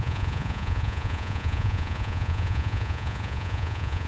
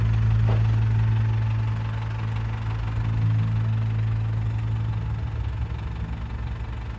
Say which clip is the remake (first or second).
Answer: first